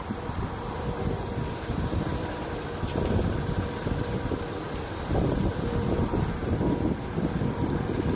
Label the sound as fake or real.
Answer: fake